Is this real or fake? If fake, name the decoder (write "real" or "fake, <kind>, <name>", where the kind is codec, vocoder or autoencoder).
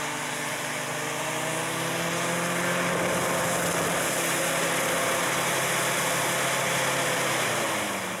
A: real